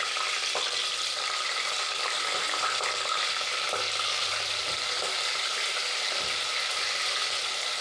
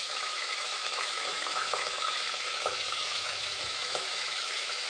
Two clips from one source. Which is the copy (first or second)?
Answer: second